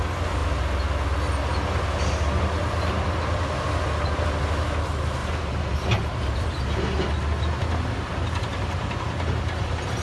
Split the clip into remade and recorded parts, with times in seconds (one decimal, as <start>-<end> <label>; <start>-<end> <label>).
0.0-5.2 recorded; 5.2-6.6 remade; 6.6-10.0 recorded